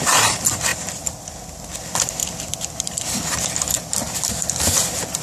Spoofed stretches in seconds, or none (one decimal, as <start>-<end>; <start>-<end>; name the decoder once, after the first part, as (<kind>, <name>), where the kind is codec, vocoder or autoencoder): 0.0-5.2 (vocoder, BigVGAN v2)